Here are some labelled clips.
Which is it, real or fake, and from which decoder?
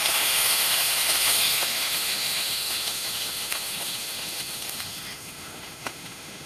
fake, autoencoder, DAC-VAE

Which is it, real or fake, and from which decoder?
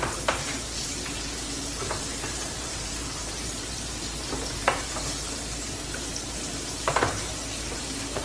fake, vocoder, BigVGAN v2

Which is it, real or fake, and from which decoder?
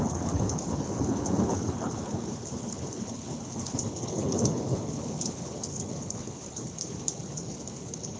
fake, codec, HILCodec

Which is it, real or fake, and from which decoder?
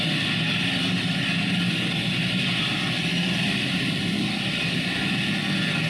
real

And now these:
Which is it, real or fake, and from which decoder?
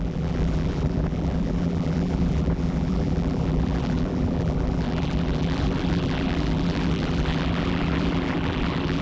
fake, vocoder, BigVGAN v2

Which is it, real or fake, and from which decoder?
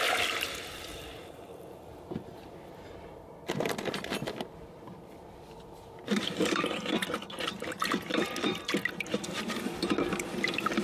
fake, vocoder, BigVGAN v2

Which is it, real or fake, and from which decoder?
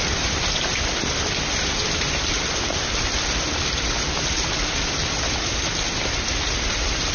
fake, vocoder, BigVGAN v2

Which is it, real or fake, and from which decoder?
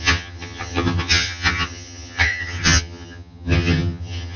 fake, vocoder, HiFi-GAN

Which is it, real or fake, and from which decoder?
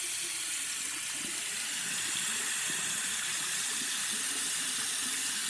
real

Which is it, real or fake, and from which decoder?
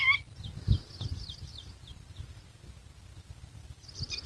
real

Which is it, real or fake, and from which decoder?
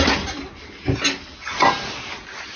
real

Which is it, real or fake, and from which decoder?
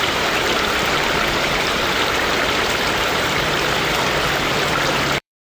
fake, vocoder, BigVGAN v2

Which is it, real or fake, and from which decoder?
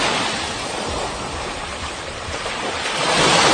real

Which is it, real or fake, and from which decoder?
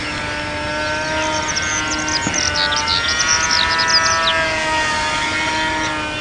real